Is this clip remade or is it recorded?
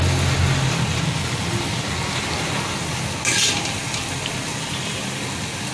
recorded